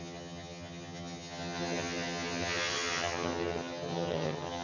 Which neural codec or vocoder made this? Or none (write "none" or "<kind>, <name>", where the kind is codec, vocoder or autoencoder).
vocoder, HiFi-GAN